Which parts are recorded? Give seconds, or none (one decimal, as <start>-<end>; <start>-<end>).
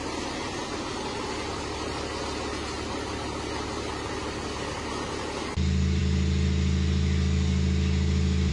0.0-8.5